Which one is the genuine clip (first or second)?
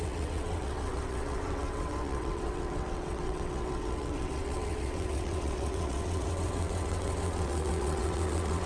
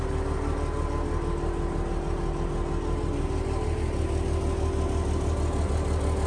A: second